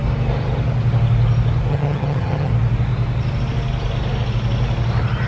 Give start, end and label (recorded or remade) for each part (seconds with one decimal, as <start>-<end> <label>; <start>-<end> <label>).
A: 0.0-1.7 recorded; 1.7-2.5 remade; 2.5-5.3 recorded